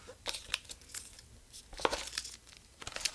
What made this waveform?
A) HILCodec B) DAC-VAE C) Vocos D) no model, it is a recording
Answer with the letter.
D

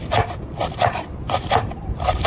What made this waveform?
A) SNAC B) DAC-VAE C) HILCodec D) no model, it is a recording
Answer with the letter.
D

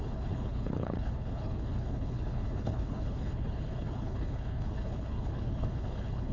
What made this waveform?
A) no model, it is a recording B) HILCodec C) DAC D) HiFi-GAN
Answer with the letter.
B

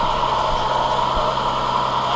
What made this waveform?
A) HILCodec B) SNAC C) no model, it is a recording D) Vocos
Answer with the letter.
C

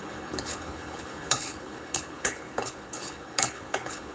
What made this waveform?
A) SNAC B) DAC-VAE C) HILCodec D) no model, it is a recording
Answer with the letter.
C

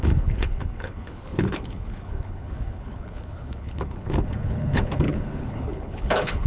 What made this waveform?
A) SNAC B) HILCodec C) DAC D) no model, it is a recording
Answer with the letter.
B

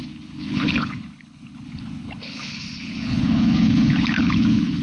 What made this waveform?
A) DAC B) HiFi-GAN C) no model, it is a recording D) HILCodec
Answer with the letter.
D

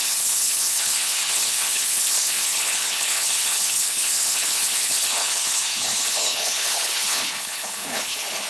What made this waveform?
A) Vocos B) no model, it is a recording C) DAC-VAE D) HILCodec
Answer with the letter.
D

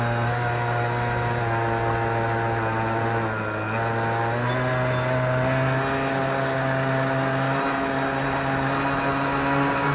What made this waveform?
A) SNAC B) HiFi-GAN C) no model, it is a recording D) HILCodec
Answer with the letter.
C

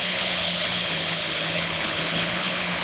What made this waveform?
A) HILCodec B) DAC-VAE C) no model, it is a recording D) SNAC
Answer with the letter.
A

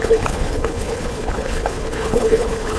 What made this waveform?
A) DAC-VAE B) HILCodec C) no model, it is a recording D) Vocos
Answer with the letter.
B